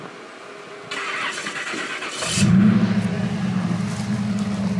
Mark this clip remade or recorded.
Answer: recorded